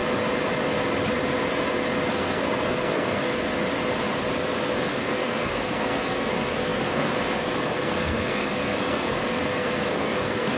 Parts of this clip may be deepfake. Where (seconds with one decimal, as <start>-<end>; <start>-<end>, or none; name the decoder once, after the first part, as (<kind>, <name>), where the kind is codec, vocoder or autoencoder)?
2.1-3.3 (codec, SNAC); 4.8-10.6